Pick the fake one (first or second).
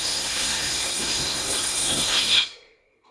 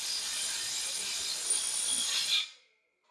first